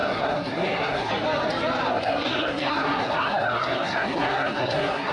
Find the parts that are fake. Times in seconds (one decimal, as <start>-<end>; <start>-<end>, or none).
0.0-1.1; 1.9-5.1